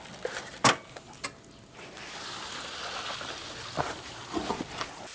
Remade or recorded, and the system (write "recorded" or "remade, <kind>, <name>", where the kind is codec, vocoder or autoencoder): recorded